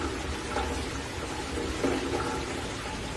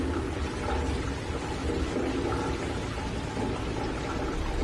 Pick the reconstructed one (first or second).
second